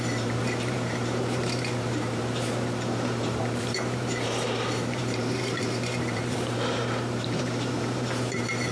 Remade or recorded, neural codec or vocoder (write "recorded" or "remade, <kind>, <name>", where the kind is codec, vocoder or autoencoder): remade, vocoder, BigVGAN v2